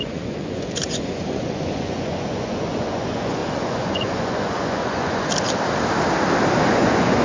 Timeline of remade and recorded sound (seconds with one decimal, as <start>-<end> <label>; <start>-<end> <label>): 0.0-5.3 remade; 5.3-6.7 recorded; 6.7-7.2 remade